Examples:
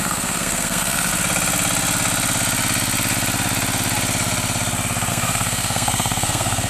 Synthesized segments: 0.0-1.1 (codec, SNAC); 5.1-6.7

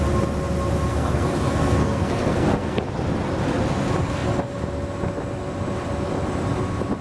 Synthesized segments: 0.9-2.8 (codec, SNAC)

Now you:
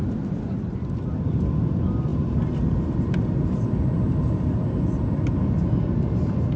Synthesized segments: none